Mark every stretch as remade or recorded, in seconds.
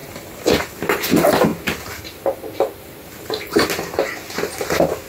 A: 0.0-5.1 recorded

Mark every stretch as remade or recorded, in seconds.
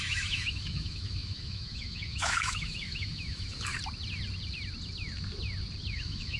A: 0.0-3.7 remade; 3.7-5.9 recorded; 5.9-6.4 remade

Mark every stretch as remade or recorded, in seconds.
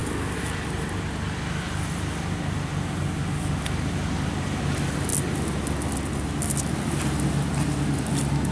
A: 0.0-8.5 recorded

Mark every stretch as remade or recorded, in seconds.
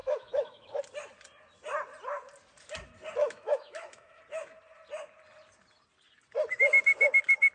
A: 0.0-0.8 remade; 0.8-3.2 recorded; 3.2-4.2 remade; 4.2-7.5 recorded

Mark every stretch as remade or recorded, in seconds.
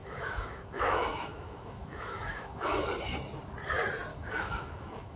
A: 0.0-2.9 remade; 2.9-4.1 recorded; 4.1-5.2 remade